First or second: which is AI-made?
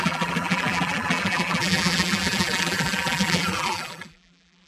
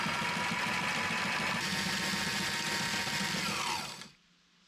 first